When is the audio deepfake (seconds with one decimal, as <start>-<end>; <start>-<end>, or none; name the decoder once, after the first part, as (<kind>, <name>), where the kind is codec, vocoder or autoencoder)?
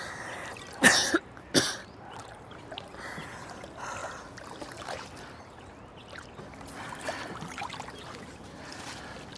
4.0-6.0 (vocoder, BigVGAN v2); 7.7-8.9